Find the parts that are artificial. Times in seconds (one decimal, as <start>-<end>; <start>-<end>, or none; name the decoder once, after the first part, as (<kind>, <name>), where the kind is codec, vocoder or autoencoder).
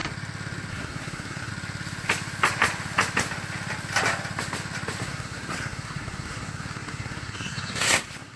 0.7-1.5 (codec, SNAC); 5.0-8.4